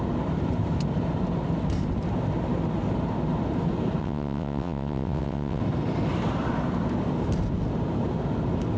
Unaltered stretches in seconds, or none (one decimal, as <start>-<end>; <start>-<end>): 0.0-4.0; 5.6-8.8